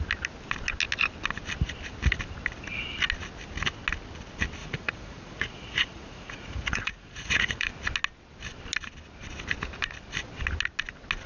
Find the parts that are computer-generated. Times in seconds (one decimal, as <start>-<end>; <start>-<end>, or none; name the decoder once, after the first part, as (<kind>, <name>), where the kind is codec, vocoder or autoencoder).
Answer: 4.6-7.7 (vocoder, Vocos)

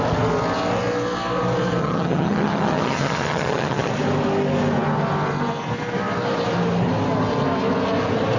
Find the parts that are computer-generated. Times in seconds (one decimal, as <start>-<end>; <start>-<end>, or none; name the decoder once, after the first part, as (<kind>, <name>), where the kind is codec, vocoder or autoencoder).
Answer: 1.8-3.9 (vocoder, HiFi-GAN)

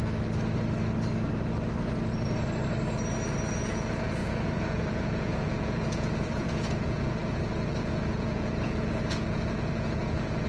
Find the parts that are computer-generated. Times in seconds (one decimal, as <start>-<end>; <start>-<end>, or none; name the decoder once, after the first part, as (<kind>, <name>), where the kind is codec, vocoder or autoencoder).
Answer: 3.5-10.5 (vocoder, Vocos)

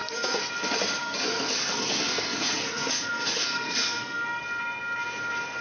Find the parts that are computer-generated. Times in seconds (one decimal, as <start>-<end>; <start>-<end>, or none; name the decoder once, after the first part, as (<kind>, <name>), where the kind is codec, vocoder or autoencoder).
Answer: 0.0-0.5 (codec, SNAC); 1.0-4.4